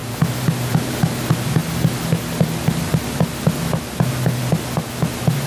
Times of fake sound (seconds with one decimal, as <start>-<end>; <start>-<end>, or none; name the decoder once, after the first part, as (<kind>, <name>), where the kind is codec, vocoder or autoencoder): none